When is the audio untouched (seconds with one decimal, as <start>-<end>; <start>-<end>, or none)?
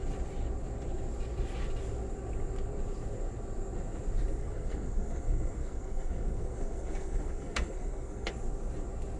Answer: 0.0-4.4; 8.3-9.2